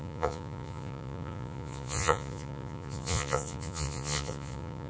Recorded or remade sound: remade